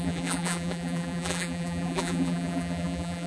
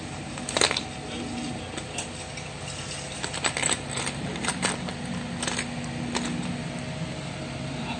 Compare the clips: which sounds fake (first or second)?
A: first